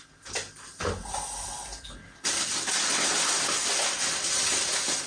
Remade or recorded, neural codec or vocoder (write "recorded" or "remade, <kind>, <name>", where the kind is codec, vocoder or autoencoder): recorded